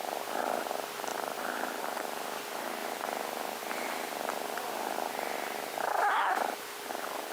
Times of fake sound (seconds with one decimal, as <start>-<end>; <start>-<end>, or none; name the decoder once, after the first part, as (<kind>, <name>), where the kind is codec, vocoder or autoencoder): none